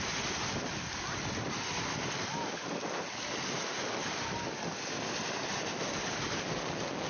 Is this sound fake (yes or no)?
no